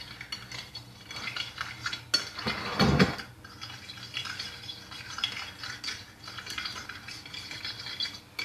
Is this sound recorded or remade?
recorded